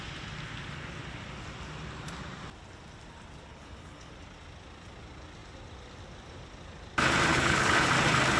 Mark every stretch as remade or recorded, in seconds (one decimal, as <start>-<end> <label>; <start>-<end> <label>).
0.0-3.5 recorded; 3.5-4.1 remade; 4.1-7.3 recorded; 7.3-7.9 remade; 7.9-8.4 recorded